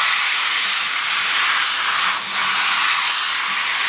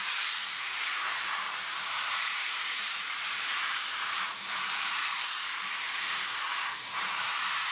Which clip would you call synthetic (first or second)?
second